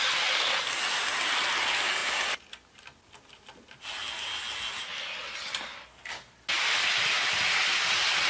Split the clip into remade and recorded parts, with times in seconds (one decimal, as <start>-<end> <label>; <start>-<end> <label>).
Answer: 0.0-8.3 recorded